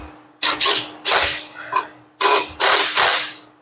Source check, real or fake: real